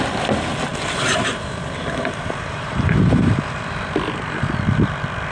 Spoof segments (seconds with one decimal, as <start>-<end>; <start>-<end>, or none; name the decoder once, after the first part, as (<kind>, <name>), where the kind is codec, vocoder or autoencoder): 0.7-3.3 (vocoder, BigVGAN v2)